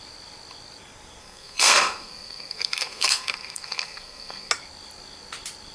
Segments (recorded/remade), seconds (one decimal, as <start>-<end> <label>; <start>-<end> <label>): 0.0-1.2 recorded; 1.2-4.5 remade; 4.5-5.7 recorded